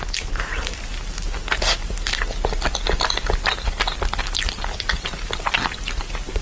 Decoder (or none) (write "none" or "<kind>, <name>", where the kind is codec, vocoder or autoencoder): none